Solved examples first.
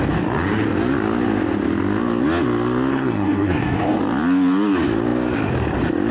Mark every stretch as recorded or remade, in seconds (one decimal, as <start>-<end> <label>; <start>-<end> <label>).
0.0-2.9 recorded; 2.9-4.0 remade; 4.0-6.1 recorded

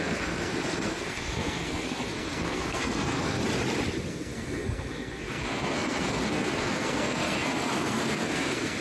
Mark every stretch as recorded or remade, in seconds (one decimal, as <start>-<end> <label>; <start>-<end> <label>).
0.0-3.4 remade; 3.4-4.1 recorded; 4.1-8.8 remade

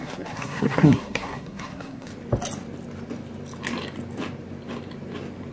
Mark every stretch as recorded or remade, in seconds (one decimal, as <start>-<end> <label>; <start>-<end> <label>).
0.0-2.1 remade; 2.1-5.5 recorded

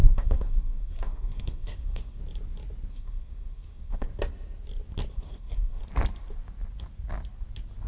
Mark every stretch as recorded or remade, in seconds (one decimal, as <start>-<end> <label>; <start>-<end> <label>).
0.0-2.2 remade; 2.2-2.9 recorded; 2.9-4.1 remade; 4.1-5.1 recorded; 5.1-5.8 remade; 5.8-7.9 recorded